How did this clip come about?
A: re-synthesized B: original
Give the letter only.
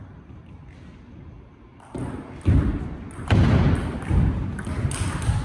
B